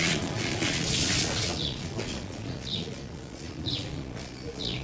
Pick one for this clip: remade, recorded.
remade